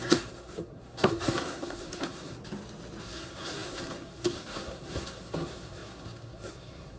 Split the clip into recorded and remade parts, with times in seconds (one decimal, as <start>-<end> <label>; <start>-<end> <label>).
0.0-2.4 remade; 2.4-3.0 recorded; 3.0-7.0 remade